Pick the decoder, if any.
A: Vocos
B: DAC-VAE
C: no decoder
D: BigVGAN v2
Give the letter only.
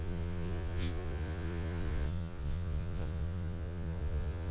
A